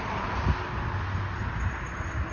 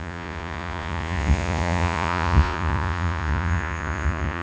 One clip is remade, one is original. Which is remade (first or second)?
second